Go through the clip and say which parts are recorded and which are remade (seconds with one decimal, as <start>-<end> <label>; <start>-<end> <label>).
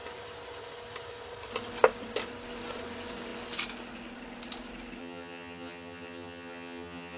0.0-5.0 recorded; 5.0-7.2 remade